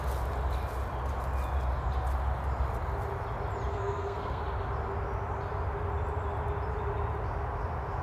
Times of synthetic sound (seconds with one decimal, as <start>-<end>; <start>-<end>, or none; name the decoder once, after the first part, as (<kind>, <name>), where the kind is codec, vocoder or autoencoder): 3.7-4.4 (codec, SNAC)

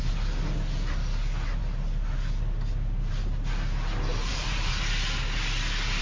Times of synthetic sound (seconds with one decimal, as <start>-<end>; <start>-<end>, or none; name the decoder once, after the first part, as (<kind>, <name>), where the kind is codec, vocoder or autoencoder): 4.1-4.7 (vocoder, BigVGAN v2)

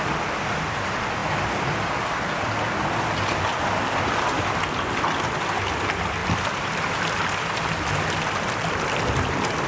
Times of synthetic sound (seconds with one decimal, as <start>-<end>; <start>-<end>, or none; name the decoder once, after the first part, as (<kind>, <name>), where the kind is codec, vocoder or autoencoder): none

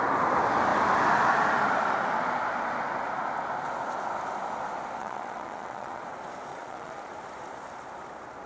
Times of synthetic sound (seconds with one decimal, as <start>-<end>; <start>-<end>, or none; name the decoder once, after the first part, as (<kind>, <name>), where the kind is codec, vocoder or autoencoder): 5.0-6.0 (vocoder, Vocos); 6.5-7.1

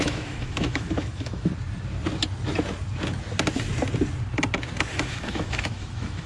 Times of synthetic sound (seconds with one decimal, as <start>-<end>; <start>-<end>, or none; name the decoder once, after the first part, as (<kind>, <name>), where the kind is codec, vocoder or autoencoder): 0.0-1.5 (autoencoder, DAC-VAE); 4.9-6.3

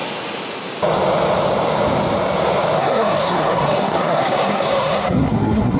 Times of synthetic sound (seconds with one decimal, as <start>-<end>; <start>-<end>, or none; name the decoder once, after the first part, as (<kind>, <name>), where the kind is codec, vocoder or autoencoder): 2.8-5.8 (codec, SNAC)

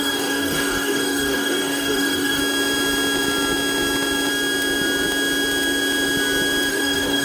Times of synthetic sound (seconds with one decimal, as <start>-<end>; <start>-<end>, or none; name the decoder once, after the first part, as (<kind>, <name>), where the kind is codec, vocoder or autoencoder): 0.0-2.4 (codec, DAC); 6.7-7.2

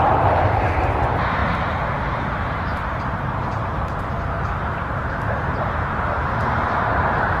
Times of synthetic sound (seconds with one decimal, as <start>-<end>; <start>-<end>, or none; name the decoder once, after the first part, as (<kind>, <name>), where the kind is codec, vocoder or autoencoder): 0.0-7.4 (vocoder, BigVGAN v2)